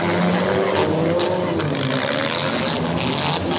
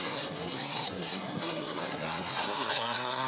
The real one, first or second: first